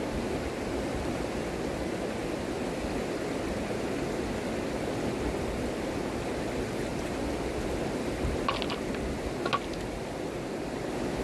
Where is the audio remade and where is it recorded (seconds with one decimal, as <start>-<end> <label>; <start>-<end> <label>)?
0.0-11.2 recorded